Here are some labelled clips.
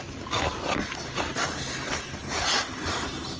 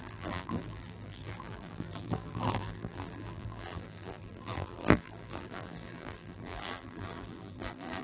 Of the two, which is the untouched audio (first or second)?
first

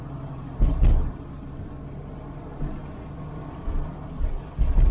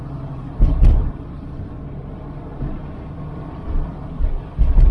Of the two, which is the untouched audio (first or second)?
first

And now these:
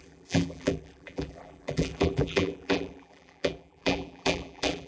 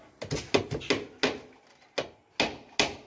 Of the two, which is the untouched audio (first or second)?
second